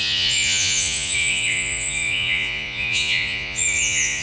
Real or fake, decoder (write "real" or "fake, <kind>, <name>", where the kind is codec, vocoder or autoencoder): fake, vocoder, Vocos